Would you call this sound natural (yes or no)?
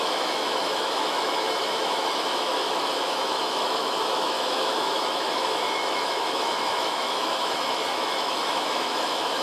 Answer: no